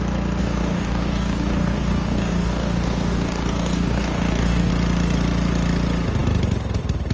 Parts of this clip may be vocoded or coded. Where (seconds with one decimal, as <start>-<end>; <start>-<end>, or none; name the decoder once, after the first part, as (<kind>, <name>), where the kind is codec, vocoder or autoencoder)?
0.4-4.7 (codec, DAC)